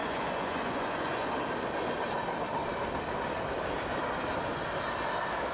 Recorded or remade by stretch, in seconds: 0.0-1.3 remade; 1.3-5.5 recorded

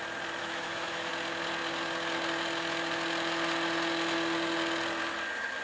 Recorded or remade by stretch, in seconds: 0.0-0.4 recorded; 0.4-1.1 remade; 1.1-5.6 recorded

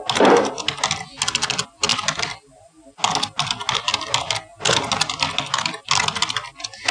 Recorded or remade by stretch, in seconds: 0.0-6.9 recorded

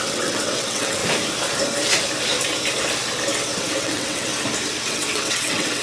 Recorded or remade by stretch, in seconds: 0.0-1.0 remade; 1.0-3.6 recorded; 3.6-4.3 remade; 4.3-4.9 recorded; 4.9-5.8 remade

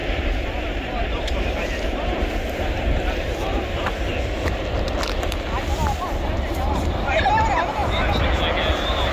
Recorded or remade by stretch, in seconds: 0.0-3.9 remade; 3.9-9.1 recorded

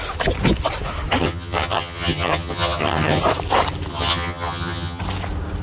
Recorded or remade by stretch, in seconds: 0.0-1.2 recorded; 1.2-3.2 remade; 3.2-3.9 recorded; 3.9-5.0 remade; 5.0-5.6 recorded